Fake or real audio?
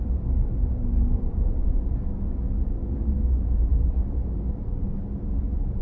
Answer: fake